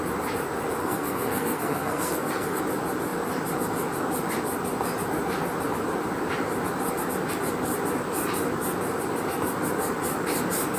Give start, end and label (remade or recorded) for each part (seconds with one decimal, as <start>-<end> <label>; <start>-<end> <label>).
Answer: 0.0-0.8 recorded; 0.8-2.6 remade; 2.6-10.8 recorded